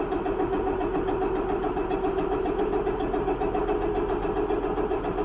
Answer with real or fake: real